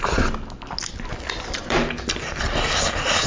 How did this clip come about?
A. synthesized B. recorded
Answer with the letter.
B